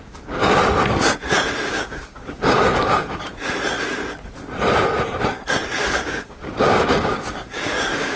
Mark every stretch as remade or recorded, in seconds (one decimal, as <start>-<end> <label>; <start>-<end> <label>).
0.0-0.4 remade; 0.4-1.7 recorded; 1.7-3.3 remade; 3.3-5.9 recorded; 5.9-8.2 remade